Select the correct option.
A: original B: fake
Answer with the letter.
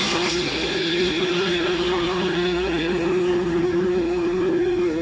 B